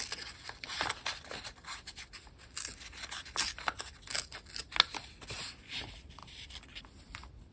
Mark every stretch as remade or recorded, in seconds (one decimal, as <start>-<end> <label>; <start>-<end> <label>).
0.0-7.5 recorded